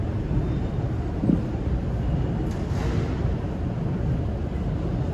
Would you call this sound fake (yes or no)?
no